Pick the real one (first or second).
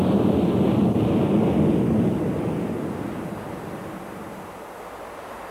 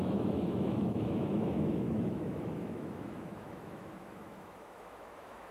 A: first